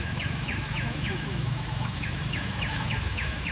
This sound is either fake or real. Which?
fake